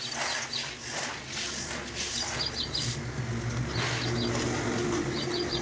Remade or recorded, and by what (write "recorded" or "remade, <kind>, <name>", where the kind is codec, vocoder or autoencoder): recorded